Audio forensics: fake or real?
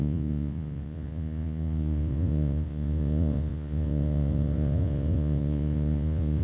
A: fake